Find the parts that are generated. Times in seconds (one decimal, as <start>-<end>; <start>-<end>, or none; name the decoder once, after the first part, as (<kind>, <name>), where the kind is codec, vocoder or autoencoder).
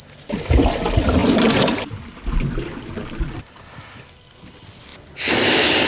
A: none